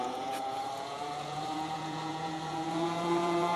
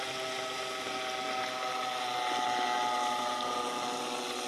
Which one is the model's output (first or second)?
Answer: first